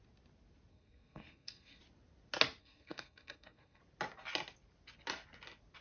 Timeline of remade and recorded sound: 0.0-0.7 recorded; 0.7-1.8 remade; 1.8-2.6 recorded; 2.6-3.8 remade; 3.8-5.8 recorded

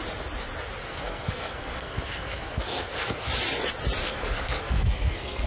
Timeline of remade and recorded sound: 0.0-0.8 recorded; 0.8-3.3 remade; 3.3-4.0 recorded; 4.0-5.5 remade

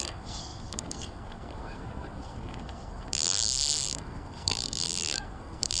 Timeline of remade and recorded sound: 0.0-5.8 remade

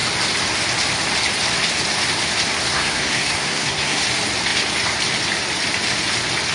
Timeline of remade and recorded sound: 0.0-2.7 recorded; 2.7-4.0 remade; 4.0-6.5 recorded

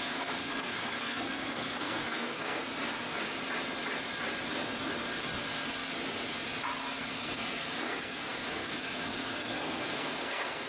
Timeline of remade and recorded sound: 0.0-2.6 remade; 2.6-7.0 recorded; 7.0-10.7 remade

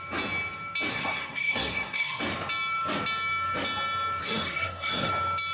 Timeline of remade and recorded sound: 0.0-0.9 recorded; 0.9-2.2 remade; 2.2-4.2 recorded; 4.2-5.1 remade; 5.1-5.5 recorded